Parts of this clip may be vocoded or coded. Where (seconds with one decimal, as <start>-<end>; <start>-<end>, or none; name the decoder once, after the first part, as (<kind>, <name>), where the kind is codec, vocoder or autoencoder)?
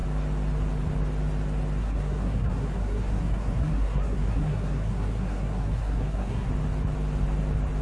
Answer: 1.8-6.5 (codec, SNAC)